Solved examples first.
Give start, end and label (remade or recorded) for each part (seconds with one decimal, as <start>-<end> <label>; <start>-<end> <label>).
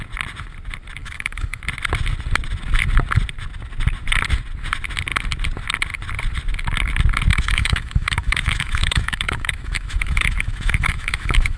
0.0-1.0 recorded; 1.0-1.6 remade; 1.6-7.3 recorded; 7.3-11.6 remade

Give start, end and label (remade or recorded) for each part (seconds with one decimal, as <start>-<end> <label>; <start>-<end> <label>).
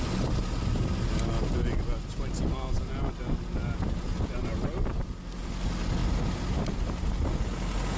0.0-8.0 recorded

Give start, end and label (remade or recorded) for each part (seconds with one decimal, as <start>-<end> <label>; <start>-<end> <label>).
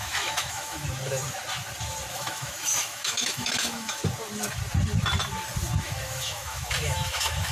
0.0-0.8 remade; 0.8-2.1 recorded; 2.1-4.0 remade; 4.0-5.8 recorded; 5.8-7.5 remade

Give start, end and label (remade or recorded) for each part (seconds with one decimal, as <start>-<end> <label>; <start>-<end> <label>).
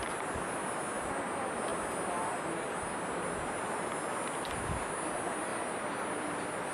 0.0-6.7 recorded